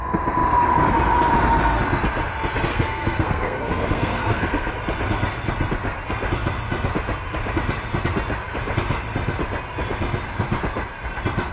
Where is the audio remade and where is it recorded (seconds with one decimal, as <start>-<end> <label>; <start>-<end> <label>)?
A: 0.0-2.7 recorded; 2.7-4.7 remade; 4.7-11.5 recorded